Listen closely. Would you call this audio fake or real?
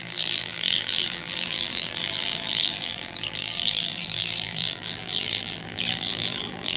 fake